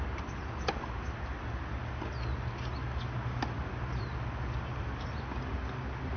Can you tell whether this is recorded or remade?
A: recorded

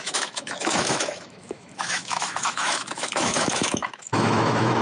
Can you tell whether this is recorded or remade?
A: remade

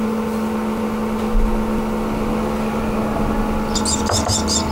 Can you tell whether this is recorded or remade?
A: recorded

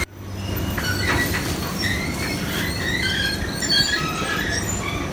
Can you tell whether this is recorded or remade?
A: recorded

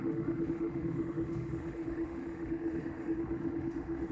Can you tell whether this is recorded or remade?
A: remade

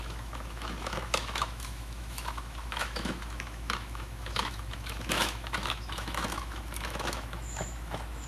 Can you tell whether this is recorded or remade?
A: remade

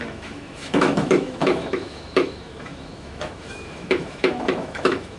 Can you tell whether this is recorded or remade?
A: remade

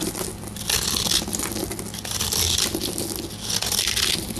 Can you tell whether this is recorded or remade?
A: recorded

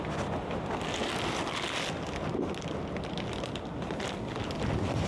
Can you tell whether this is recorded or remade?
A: recorded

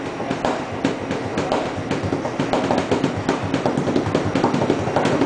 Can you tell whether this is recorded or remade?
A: recorded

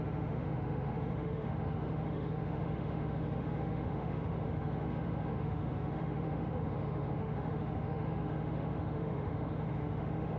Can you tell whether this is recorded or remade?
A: remade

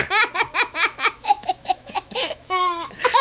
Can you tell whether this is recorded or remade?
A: remade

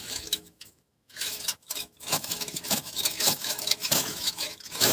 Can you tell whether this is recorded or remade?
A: remade